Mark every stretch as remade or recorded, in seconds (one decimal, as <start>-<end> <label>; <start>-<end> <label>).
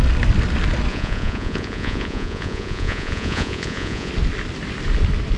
0.0-0.9 recorded; 0.9-4.1 remade; 4.1-5.4 recorded